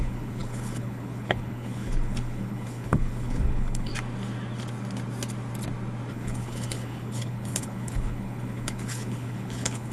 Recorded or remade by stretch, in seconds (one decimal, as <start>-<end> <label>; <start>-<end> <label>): 0.0-3.9 remade; 3.9-6.1 recorded; 6.1-9.9 remade